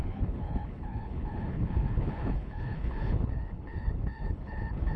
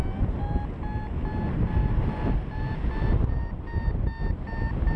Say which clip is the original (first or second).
second